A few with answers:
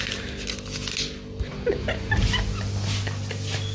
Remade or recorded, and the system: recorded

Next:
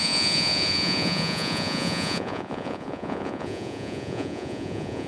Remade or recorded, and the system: remade, vocoder, Vocos